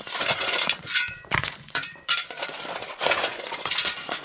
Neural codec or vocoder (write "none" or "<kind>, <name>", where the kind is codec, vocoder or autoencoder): vocoder, Vocos